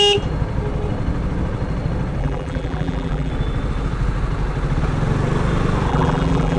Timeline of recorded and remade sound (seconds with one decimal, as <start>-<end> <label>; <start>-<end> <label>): 0.0-2.2 recorded; 2.2-3.3 remade; 3.3-5.9 recorded; 5.9-6.6 remade

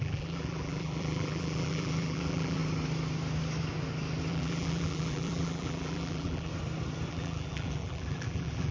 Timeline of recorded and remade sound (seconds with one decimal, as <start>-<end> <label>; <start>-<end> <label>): 0.0-2.6 remade; 2.6-4.3 recorded; 4.3-6.5 remade; 6.5-7.1 recorded; 7.1-8.7 remade

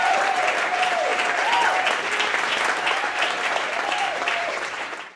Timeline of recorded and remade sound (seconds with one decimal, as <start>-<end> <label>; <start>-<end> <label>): 0.0-1.1 remade; 1.1-2.4 recorded; 2.4-5.2 remade